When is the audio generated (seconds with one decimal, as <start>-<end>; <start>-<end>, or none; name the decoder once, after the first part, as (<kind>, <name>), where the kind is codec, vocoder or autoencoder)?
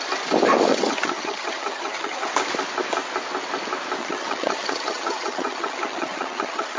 0.7-2.3 (vocoder, HiFi-GAN); 4.0-6.8